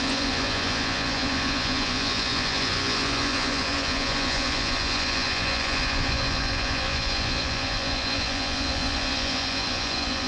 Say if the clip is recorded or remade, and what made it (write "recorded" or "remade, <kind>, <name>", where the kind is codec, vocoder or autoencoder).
remade, vocoder, Vocos